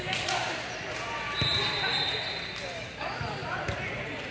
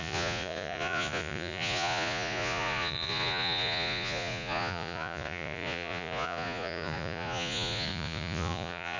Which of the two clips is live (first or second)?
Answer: first